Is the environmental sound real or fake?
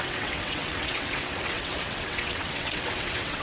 fake